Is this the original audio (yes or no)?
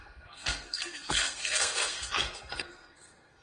no